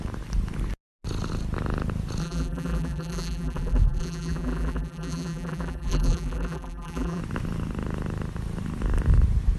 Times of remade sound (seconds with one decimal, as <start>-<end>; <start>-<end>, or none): 2.2-7.2